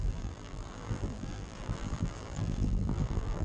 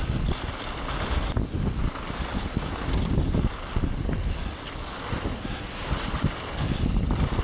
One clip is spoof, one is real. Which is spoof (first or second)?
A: first